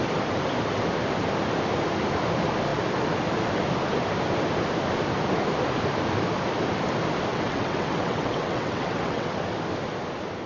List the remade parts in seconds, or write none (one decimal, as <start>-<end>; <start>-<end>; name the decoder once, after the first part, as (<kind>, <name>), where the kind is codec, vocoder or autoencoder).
7.3-9.3 (vocoder, WaveNeXt)